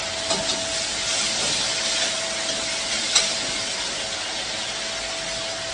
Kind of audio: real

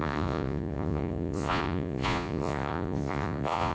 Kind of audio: fake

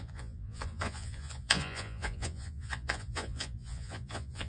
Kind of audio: fake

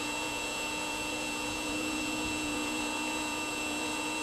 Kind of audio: fake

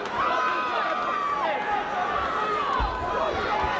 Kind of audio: real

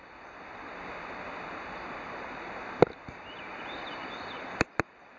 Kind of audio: real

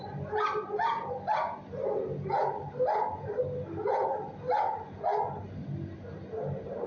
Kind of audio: real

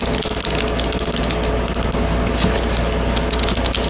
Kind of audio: real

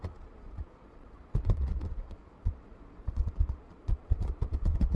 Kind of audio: fake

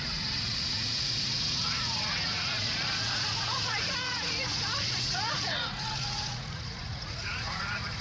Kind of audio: fake